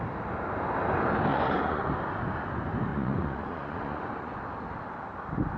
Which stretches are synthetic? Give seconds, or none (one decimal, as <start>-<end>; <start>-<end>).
1.3-1.9; 2.9-4.4